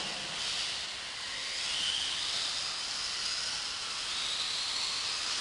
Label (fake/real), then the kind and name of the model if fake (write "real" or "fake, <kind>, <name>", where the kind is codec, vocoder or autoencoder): real